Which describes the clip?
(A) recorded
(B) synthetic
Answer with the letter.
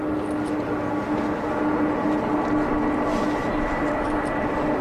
A